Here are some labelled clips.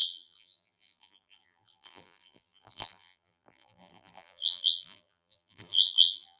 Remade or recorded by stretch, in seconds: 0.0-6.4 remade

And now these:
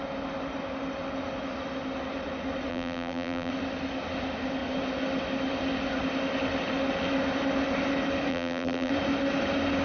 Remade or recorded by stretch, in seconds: 0.0-2.7 recorded; 2.7-3.5 remade; 3.5-8.3 recorded; 8.3-8.9 remade; 8.9-9.8 recorded

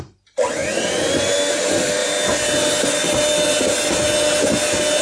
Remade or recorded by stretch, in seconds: 0.0-0.6 remade; 0.6-1.6 recorded; 1.6-2.0 remade; 2.0-5.0 recorded

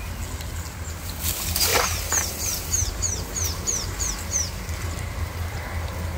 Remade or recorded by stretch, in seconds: 0.0-1.7 recorded; 1.7-4.1 remade; 4.1-6.2 recorded

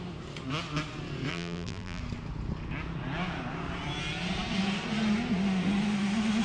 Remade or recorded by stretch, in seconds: 0.0-1.3 recorded; 1.3-2.0 remade; 2.0-6.4 recorded

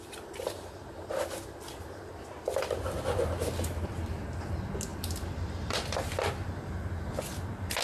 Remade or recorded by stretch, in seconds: 0.0-4.9 recorded; 4.9-6.3 remade; 6.3-7.8 recorded

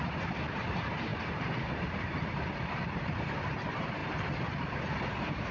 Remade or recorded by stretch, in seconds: 0.0-4.0 remade; 4.0-5.1 recorded; 5.1-5.5 remade

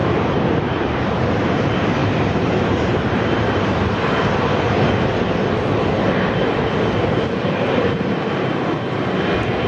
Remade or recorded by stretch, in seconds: 0.0-2.0 recorded; 2.0-3.7 remade; 3.7-9.7 recorded